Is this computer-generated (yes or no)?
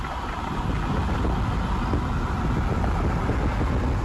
no